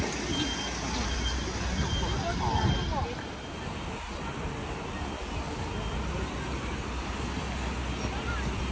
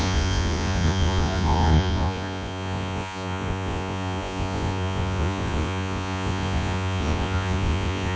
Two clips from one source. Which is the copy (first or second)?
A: second